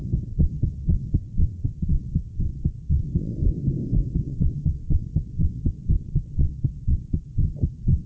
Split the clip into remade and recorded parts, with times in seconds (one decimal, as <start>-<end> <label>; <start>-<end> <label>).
0.0-3.4 remade; 3.4-4.1 recorded; 4.1-8.1 remade